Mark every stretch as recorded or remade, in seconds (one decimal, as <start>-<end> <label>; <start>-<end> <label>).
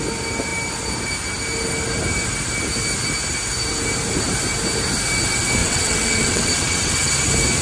0.0-5.6 recorded; 5.6-7.1 remade; 7.1-7.6 recorded